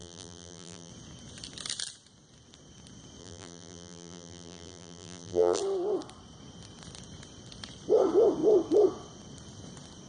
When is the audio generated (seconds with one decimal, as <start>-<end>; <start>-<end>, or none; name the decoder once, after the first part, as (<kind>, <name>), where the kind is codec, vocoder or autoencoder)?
0.0-0.9 (vocoder, BigVGAN v2); 3.2-5.6

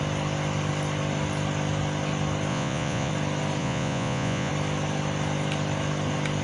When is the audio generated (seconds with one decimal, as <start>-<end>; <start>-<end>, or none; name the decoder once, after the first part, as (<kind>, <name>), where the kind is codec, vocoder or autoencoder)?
2.5-3.1 (vocoder, Vocos); 3.6-4.5

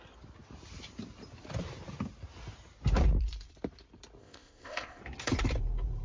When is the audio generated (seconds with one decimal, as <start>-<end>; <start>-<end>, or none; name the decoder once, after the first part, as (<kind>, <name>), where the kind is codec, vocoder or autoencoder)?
4.2-5.0 (codec, ZipCodec)

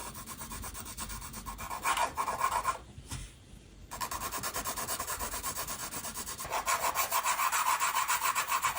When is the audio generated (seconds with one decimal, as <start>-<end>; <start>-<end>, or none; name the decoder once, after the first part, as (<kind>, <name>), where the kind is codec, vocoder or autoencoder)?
5.0-5.8 (vocoder, BigVGAN v2); 7.2-8.8